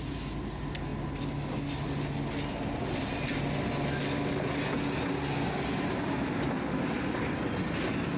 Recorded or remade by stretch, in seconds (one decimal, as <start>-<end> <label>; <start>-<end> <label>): 0.0-8.2 recorded